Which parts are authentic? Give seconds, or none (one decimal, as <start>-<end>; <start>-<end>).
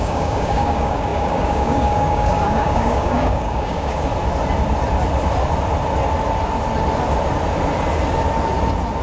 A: 4.1-9.0